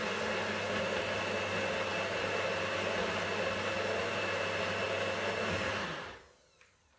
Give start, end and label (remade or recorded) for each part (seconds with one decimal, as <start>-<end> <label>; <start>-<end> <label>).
0.0-7.0 recorded

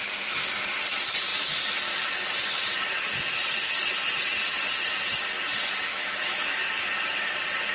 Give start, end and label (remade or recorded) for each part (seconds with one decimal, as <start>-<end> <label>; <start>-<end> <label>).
0.0-5.9 recorded; 5.9-6.5 remade; 6.5-7.7 recorded

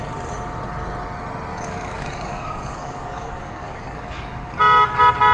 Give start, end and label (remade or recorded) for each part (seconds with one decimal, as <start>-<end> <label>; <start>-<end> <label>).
0.0-1.5 recorded; 1.5-4.5 remade; 4.5-5.3 recorded

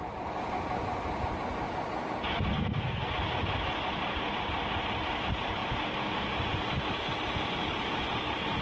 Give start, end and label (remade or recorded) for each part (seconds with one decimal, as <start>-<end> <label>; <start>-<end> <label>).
0.0-2.5 recorded; 2.5-3.1 remade; 3.1-8.6 recorded